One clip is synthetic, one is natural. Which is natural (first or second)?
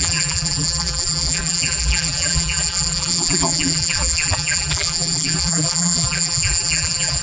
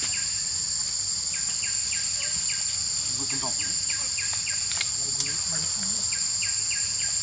second